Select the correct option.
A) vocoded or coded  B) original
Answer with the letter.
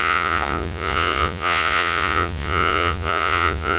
A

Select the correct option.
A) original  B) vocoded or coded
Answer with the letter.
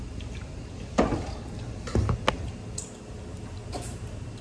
A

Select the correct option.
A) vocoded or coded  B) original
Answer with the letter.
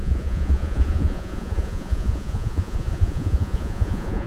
A